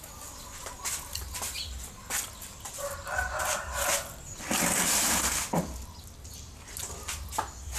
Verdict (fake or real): real